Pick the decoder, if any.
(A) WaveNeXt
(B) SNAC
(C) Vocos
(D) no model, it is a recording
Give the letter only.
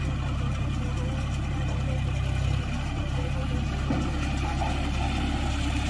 D